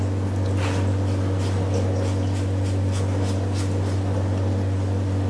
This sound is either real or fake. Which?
real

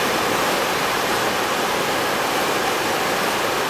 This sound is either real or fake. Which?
real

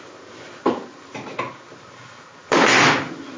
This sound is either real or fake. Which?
real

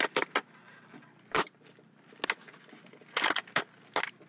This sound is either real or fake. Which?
real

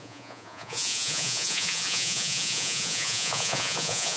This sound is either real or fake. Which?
fake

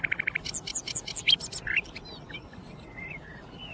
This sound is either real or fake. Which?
real